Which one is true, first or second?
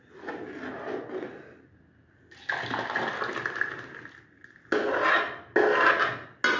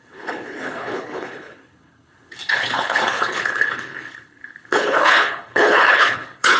first